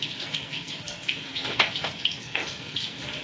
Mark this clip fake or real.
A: fake